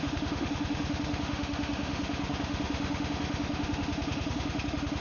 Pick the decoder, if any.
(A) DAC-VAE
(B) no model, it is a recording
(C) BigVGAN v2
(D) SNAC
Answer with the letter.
A